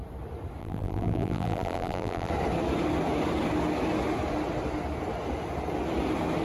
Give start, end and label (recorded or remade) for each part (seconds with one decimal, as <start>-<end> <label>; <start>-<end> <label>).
0.0-0.6 recorded; 0.6-2.3 remade; 2.3-6.4 recorded

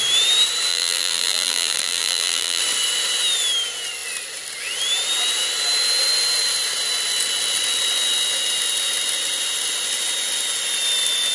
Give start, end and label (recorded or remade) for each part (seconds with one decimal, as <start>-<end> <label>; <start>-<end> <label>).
0.0-0.7 recorded; 0.7-2.6 remade; 2.6-11.3 recorded